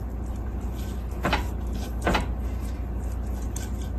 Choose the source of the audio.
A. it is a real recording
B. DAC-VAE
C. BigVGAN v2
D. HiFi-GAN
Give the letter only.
A